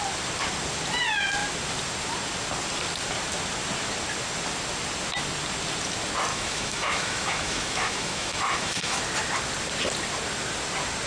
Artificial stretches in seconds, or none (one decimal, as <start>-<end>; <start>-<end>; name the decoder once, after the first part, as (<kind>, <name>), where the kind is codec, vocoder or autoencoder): 6.3-9.0 (autoencoder, DAC-VAE)